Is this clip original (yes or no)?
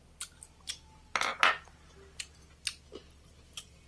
yes